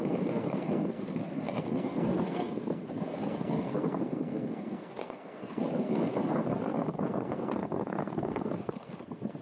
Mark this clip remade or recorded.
remade